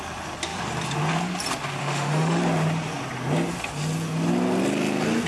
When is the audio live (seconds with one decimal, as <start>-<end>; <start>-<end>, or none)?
0.0-1.8; 2.4-5.3